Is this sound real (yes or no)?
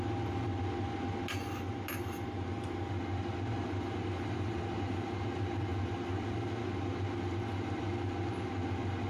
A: yes